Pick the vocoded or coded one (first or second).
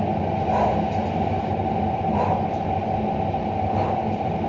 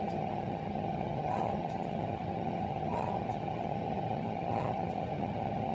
second